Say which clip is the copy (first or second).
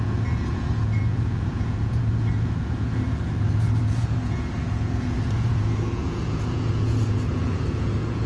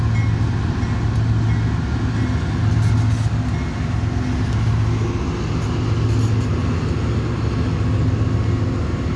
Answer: first